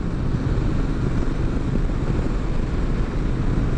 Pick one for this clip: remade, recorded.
recorded